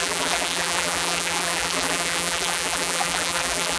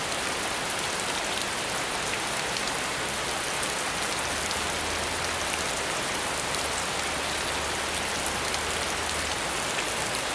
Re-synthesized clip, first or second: first